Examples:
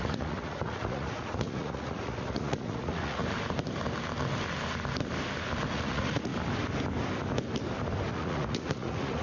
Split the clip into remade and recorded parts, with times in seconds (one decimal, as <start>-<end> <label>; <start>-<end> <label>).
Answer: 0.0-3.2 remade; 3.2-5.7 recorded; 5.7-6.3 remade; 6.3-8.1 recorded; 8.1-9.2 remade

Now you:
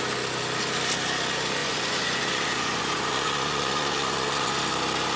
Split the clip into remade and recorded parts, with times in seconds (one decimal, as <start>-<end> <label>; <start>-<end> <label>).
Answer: 0.0-1.6 recorded; 1.6-4.6 remade; 4.6-5.2 recorded

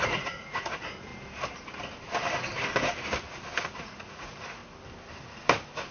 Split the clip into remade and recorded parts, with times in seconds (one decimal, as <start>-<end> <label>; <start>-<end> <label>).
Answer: 0.0-1.1 remade; 1.1-3.8 recorded; 3.8-4.6 remade; 4.6-5.9 recorded

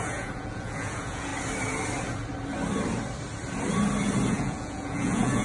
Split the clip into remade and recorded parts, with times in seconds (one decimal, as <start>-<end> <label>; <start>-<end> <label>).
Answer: 0.0-1.3 remade; 1.3-4.3 recorded; 4.3-5.4 remade

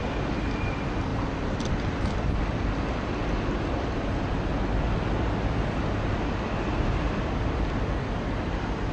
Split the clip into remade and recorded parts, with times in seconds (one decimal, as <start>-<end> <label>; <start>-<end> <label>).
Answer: 0.0-8.9 recorded

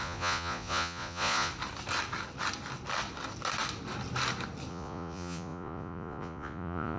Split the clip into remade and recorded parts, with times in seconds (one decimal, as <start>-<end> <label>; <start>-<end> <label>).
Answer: 0.0-1.5 remade; 1.5-4.7 recorded; 4.7-7.0 remade